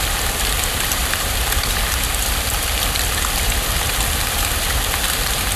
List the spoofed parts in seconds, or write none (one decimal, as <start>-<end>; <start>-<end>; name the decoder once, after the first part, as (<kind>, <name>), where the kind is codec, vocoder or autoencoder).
none